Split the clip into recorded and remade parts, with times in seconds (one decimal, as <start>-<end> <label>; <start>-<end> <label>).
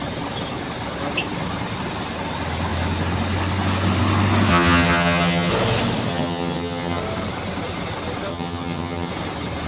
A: 0.0-4.5 recorded; 4.5-5.5 remade; 5.5-6.1 recorded; 6.1-7.0 remade; 7.0-8.3 recorded; 8.3-9.1 remade; 9.1-9.7 recorded